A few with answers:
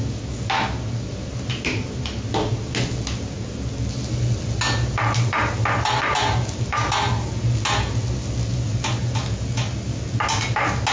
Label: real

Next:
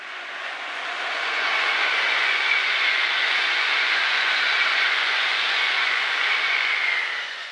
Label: fake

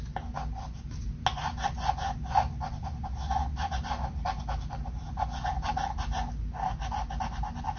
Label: real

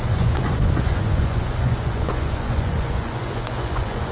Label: fake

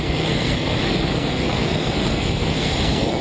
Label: fake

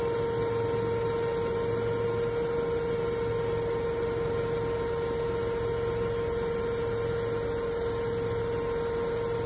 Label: real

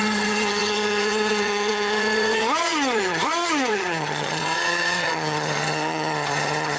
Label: fake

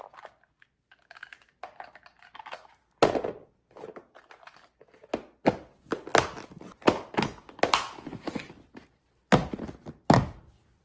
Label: real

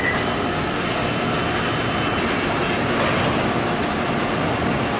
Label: real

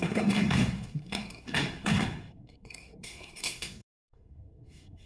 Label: fake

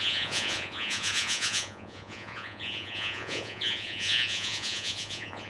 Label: fake